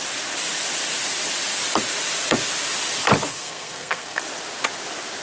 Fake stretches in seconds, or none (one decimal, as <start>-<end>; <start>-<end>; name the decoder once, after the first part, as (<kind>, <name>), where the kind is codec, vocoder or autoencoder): 3.3-4.2 (codec, SNAC)